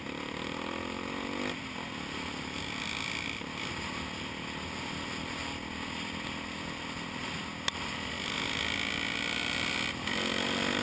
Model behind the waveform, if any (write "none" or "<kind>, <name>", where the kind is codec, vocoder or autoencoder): none